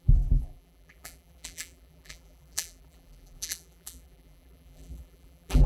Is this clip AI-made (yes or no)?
yes